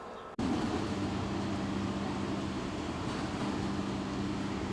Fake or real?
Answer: real